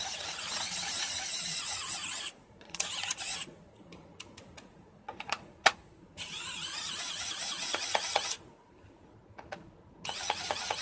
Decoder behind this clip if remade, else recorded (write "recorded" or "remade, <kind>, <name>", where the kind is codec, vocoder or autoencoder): remade, vocoder, Vocos